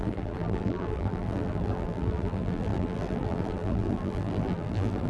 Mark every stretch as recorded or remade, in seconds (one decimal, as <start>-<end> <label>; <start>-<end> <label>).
0.0-5.1 remade